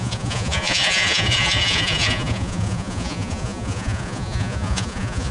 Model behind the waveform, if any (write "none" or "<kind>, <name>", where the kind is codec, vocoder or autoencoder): vocoder, Vocos